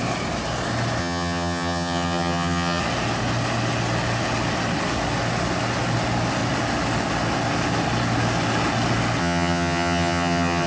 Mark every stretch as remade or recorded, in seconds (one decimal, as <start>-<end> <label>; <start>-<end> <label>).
0.0-1.0 recorded; 1.0-2.8 remade; 2.8-9.2 recorded; 9.2-10.7 remade